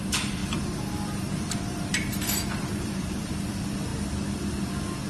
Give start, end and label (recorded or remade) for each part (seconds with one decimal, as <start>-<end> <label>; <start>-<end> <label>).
0.0-0.4 recorded; 0.4-3.5 remade; 3.5-5.1 recorded

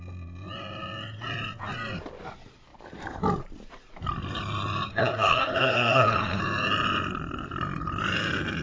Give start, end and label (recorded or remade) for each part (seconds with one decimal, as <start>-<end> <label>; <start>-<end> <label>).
0.0-4.9 recorded; 4.9-6.4 remade; 6.4-8.6 recorded

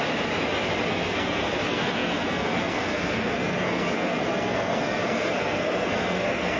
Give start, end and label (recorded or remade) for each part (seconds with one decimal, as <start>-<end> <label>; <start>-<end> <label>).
0.0-0.9 recorded; 0.9-6.6 remade

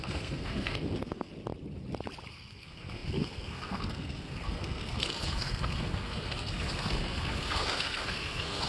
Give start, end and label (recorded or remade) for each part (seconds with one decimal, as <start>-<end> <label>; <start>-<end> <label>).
0.0-1.3 remade; 1.3-2.3 recorded; 2.3-8.7 remade